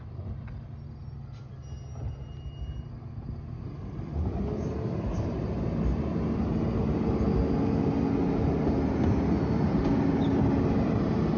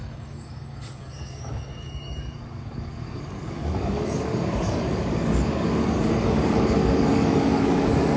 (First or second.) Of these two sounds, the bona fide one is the first